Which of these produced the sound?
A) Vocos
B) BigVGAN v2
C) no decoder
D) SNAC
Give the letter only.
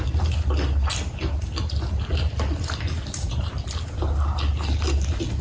C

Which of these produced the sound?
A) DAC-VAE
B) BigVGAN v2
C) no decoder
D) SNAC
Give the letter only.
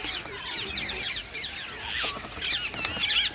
C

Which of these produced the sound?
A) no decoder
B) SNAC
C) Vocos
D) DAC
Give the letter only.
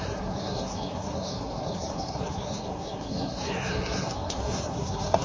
B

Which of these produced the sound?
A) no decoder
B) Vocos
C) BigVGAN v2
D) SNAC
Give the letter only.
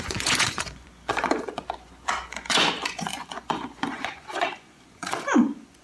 B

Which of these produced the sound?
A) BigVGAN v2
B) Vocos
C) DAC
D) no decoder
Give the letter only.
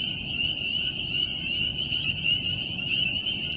B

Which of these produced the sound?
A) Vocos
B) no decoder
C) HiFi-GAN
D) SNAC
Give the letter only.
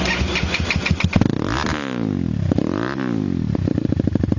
B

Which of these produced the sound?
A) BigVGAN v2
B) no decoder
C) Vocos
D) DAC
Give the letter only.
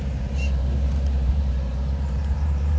A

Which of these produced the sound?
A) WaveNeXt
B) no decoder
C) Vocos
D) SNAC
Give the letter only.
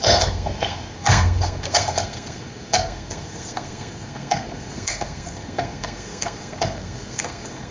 D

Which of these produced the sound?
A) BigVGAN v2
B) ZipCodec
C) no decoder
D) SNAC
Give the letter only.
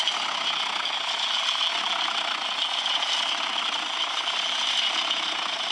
C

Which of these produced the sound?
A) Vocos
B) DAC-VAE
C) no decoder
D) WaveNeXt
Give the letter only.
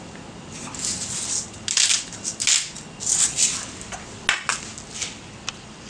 C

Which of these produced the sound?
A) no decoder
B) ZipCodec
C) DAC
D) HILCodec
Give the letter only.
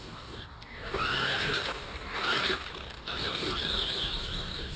C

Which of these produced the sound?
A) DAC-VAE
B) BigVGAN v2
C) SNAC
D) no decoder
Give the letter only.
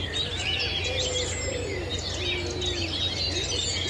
D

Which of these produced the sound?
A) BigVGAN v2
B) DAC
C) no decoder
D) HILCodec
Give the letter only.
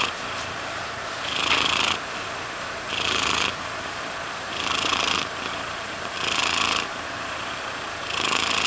A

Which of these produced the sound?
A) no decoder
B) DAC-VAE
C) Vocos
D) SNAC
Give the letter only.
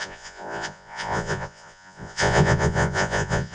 C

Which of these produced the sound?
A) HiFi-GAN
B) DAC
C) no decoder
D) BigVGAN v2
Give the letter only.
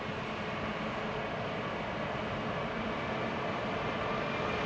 C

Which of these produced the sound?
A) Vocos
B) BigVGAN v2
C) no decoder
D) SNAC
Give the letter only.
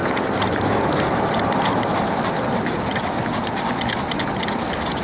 C